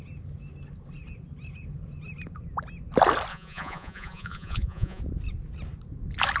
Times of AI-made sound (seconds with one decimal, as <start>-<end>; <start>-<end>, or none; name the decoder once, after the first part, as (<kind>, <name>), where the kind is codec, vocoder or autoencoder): 3.3-5.0 (vocoder, Vocos)